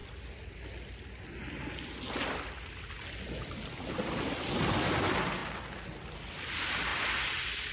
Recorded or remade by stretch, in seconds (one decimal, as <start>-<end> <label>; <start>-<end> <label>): 0.0-7.7 recorded